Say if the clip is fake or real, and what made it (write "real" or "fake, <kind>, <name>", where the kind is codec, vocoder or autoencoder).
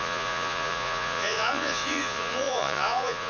fake, vocoder, Vocos